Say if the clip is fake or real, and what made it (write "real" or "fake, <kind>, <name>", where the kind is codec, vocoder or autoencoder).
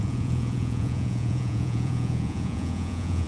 fake, vocoder, Vocos